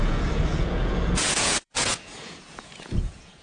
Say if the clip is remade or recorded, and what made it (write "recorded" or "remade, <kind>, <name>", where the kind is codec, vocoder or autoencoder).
remade, vocoder, Vocos